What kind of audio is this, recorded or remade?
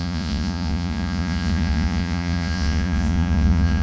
remade